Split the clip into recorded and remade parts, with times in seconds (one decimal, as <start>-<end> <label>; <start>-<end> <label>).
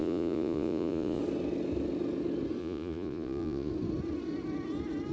0.0-1.2 remade; 1.2-2.6 recorded; 2.6-3.7 remade; 3.7-5.1 recorded